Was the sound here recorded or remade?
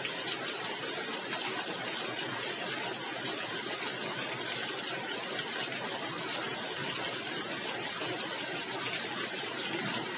recorded